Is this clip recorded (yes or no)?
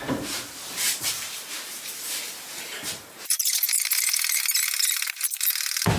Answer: no